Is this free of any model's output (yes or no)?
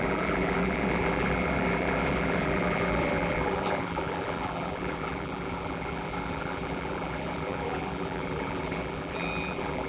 no